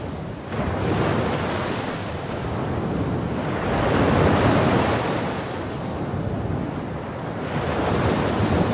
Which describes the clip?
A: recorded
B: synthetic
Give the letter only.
A